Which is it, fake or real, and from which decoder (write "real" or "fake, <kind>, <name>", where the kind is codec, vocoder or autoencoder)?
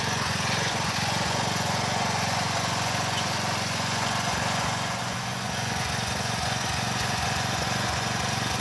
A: fake, vocoder, Vocos